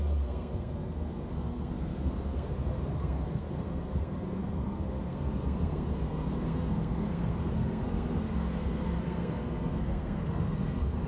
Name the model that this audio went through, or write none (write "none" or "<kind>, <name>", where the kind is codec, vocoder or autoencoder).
codec, SNAC